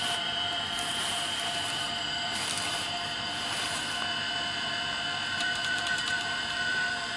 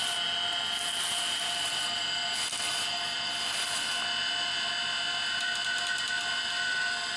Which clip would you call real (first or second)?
second